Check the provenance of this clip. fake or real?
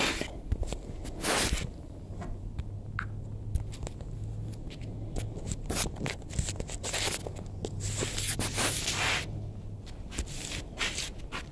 real